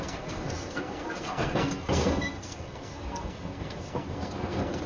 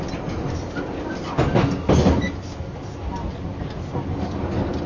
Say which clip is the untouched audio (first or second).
second